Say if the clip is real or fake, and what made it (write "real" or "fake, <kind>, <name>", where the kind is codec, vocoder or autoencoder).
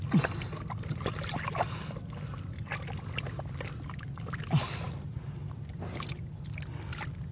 real